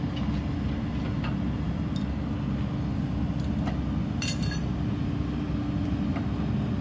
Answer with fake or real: real